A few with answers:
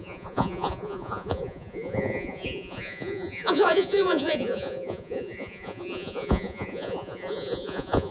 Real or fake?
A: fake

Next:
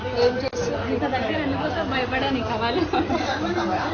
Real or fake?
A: real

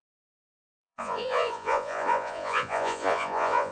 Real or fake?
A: fake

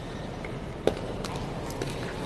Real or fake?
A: real